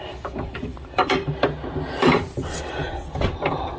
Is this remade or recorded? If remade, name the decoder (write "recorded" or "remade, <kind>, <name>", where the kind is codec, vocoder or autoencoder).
remade, vocoder, BigVGAN v2